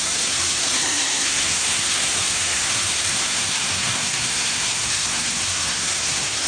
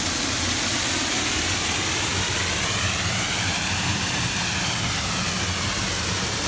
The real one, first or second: second